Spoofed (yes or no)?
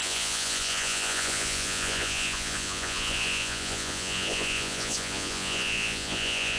yes